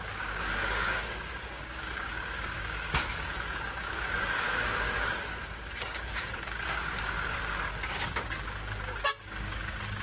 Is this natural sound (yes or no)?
no